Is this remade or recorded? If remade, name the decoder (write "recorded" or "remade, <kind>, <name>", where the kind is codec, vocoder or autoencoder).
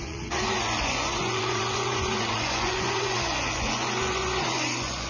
remade, vocoder, Vocos